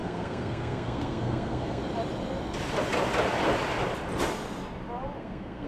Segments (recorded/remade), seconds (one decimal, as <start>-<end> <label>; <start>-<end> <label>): 0.0-1.8 remade; 1.8-5.2 recorded; 5.2-5.7 remade